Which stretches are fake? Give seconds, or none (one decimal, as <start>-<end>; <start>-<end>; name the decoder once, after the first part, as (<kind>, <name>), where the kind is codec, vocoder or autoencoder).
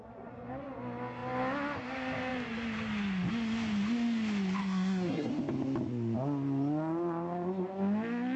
4.6-5.3 (codec, SNAC)